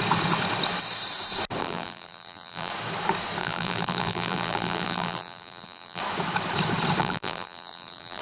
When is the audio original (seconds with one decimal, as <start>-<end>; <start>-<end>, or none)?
0.0-1.6; 2.7-3.4; 6.0-7.0